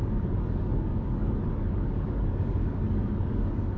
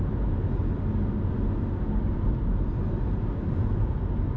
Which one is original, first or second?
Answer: second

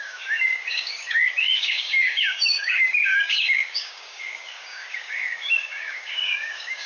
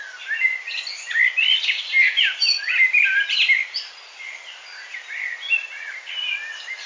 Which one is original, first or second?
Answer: second